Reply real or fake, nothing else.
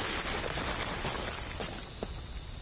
real